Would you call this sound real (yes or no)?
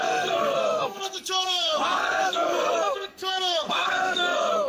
no